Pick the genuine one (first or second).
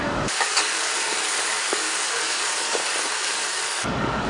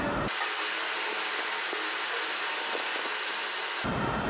second